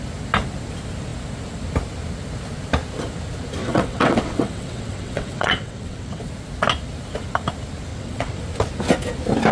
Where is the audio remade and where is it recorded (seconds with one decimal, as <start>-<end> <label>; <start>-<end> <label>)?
0.0-3.6 recorded; 3.6-6.2 remade; 6.2-7.9 recorded; 7.9-8.4 remade; 8.4-9.5 recorded